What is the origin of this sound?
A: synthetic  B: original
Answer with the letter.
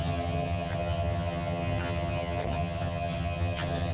A